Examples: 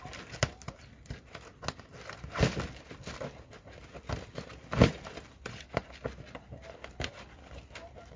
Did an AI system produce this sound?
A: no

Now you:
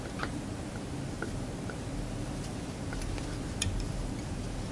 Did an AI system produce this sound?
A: no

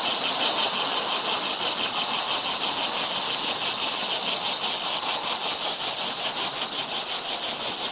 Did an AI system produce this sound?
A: no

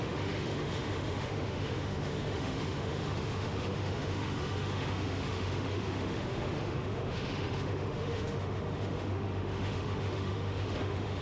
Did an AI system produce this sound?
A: yes